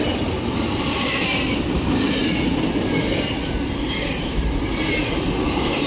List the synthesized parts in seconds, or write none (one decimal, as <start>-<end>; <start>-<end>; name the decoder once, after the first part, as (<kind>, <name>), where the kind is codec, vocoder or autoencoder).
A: none